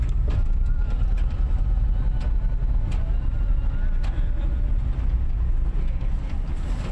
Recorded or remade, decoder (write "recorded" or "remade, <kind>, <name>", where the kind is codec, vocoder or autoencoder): recorded